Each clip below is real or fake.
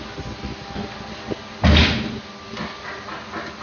real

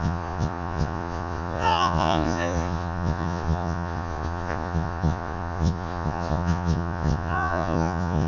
fake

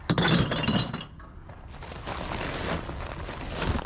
real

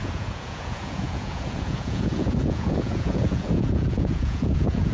fake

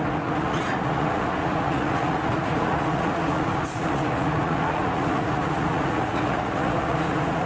fake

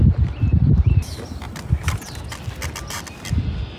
real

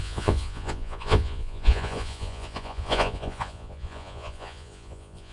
fake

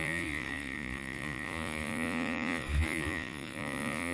fake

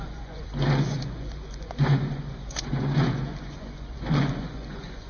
fake